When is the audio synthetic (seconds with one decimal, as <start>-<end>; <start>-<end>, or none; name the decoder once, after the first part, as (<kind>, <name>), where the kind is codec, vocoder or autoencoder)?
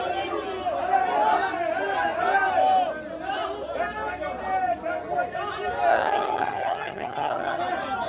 5.9-7.6 (vocoder, HiFi-GAN)